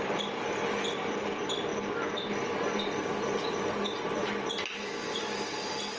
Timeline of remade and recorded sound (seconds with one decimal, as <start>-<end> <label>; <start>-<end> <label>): 0.0-6.0 recorded

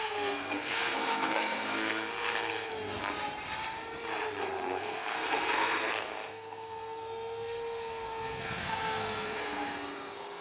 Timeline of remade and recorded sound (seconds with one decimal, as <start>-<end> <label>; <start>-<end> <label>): 0.0-2.7 remade; 2.7-4.4 recorded; 4.4-10.4 remade

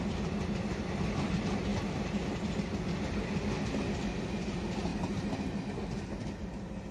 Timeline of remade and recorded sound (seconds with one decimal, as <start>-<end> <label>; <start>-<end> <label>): 0.0-4.9 recorded; 4.9-5.6 remade; 5.6-6.9 recorded